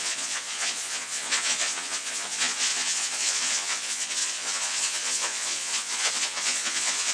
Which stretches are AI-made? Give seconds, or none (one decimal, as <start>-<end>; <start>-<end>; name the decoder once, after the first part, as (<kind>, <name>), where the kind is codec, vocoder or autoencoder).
0.0-7.1 (vocoder, Vocos)

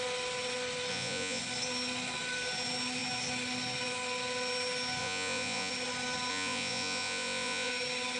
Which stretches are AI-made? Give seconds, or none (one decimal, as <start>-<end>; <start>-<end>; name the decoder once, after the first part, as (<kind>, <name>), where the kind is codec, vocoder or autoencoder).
0.9-1.4 (vocoder, Vocos); 5.0-5.7; 6.3-7.7

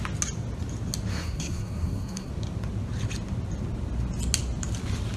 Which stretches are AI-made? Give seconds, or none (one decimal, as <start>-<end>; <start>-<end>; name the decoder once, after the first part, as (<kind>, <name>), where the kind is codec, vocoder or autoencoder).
1.1-2.3 (codec, SNAC)

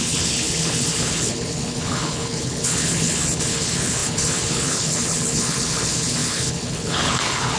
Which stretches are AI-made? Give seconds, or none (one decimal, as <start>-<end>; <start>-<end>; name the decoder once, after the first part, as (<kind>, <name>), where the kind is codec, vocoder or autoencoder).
0.0-7.6 (codec, HILCodec)

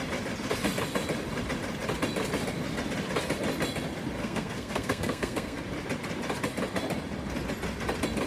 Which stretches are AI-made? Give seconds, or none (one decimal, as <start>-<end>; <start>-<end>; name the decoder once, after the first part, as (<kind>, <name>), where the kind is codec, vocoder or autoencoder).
4.2-5.6 (codec, SNAC)

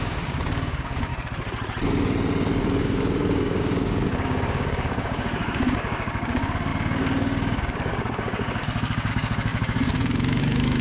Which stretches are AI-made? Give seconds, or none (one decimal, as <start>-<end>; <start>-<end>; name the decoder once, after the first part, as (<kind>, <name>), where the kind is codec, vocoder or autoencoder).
0.0-1.1 (codec, DAC); 2.6-10.8

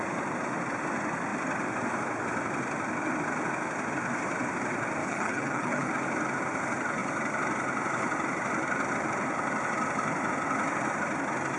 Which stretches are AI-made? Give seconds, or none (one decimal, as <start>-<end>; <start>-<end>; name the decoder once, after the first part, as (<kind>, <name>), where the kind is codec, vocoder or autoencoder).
5.0-5.9 (codec, HILCodec)